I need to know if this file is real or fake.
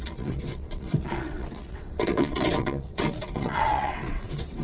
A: fake